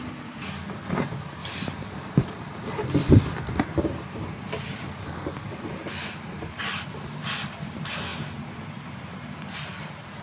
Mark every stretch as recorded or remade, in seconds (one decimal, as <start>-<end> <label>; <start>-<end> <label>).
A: 0.0-1.4 recorded; 1.4-2.3 remade; 2.3-3.0 recorded; 3.0-5.2 remade; 5.2-10.2 recorded